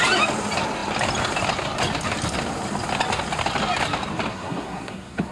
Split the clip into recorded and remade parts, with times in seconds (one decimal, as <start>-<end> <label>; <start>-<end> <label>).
0.0-4.3 recorded; 4.3-5.3 remade